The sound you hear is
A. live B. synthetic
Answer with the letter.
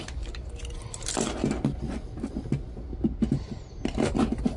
A